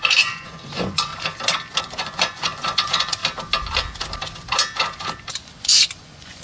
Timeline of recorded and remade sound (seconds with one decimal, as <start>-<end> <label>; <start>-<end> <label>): 0.0-1.1 remade; 1.1-1.8 recorded; 1.8-3.2 remade; 3.2-5.3 recorded; 5.3-6.4 remade